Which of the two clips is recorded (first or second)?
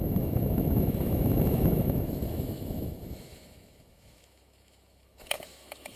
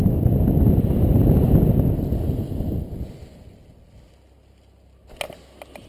second